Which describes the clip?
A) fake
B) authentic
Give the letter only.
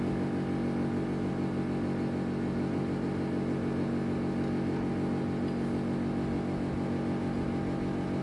B